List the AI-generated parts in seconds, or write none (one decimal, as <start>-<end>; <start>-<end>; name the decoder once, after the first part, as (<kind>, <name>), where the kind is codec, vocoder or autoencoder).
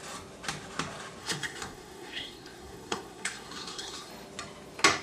1.2-4.1 (codec, SNAC)